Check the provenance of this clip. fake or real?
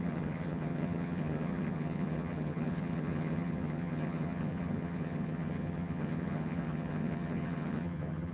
fake